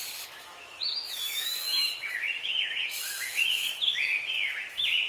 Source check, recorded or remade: remade